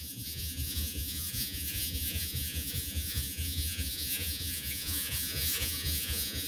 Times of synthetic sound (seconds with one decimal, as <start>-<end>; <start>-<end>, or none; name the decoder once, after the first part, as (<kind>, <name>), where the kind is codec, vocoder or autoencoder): 0.0-6.5 (vocoder, Vocos)